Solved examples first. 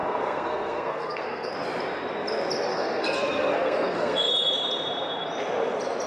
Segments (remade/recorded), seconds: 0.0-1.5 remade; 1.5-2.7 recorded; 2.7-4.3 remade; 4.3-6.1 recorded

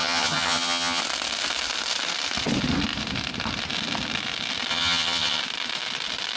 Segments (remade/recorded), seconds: 0.0-1.0 remade; 1.0-4.7 recorded; 4.7-5.4 remade; 5.4-6.4 recorded